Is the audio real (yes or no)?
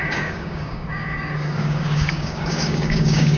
no